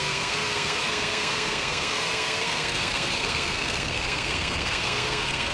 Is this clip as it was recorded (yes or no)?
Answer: no